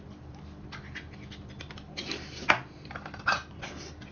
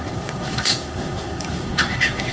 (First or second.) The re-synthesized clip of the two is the second